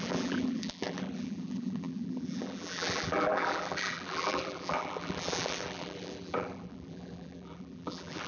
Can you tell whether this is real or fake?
fake